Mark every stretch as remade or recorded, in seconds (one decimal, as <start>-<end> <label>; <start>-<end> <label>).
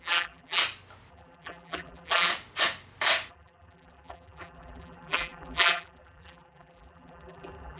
0.0-0.6 remade; 0.6-1.1 recorded; 1.1-2.3 remade; 2.3-3.3 recorded; 3.3-7.8 remade